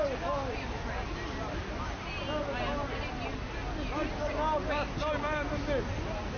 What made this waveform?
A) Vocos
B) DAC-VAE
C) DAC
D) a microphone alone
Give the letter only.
D